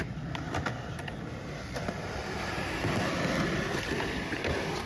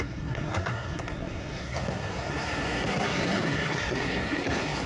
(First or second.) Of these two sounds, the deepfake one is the second